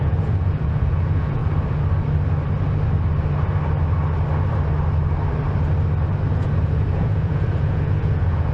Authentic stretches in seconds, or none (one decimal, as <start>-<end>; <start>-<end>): 1.4-6.4

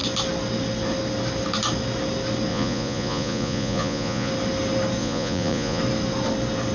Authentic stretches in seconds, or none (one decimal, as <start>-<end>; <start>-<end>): 0.0-2.5; 4.3-5.0; 5.8-6.7